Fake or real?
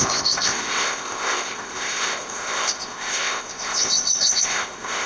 fake